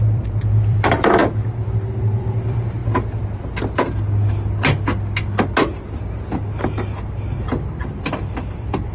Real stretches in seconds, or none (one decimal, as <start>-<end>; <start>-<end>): 1.2-2.2; 2.8-7.8